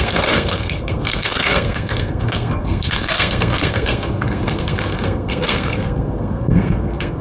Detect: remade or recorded remade